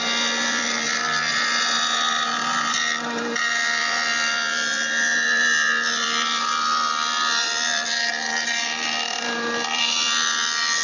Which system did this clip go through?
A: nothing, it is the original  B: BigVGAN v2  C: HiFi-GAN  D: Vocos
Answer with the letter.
B